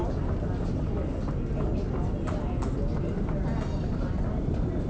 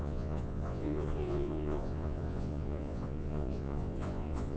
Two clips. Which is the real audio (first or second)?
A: first